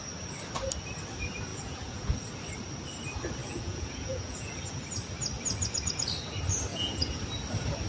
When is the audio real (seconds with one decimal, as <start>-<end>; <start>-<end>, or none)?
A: 0.0-1.5; 2.2-3.4; 4.5-6.7; 7.2-7.9